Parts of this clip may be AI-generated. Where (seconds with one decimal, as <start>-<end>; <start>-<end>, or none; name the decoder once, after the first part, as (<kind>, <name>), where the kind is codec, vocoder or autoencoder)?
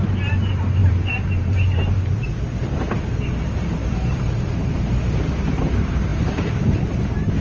0.0-7.4 (vocoder, BigVGAN v2)